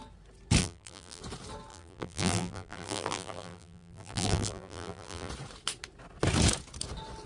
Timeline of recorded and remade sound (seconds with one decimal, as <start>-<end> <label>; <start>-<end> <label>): 0.0-0.6 recorded; 0.6-1.2 remade; 1.2-1.7 recorded; 1.7-5.3 remade; 5.3-7.3 recorded